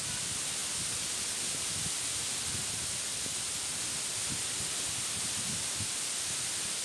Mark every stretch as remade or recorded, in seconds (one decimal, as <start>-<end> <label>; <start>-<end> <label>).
0.0-6.8 recorded